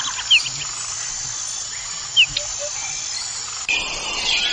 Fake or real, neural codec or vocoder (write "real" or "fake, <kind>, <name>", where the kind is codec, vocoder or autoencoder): real